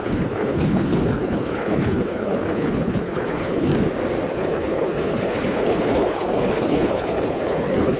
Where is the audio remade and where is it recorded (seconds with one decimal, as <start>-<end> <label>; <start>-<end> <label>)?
0.0-3.7 remade; 3.7-4.3 recorded; 4.3-8.0 remade

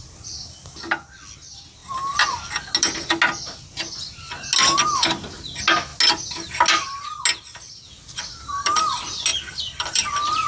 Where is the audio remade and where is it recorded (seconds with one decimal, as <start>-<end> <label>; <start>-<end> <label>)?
0.0-1.8 recorded; 1.8-2.7 remade; 2.7-9.3 recorded; 9.3-10.5 remade

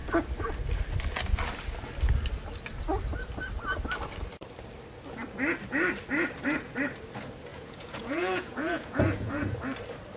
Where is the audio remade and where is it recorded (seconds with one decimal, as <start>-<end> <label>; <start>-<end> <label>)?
0.0-7.5 recorded; 7.5-9.4 remade; 9.4-10.2 recorded